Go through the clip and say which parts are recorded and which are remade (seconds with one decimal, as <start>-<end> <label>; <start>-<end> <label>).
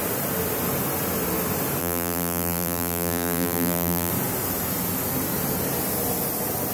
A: 0.0-1.8 recorded; 1.8-4.1 remade; 4.1-6.7 recorded